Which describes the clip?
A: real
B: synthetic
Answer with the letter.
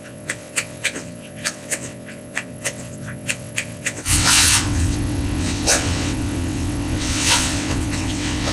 B